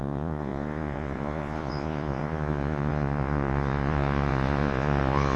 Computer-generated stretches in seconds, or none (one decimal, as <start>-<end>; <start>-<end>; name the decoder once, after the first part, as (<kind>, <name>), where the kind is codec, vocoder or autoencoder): 0.0-5.4 (vocoder, Vocos)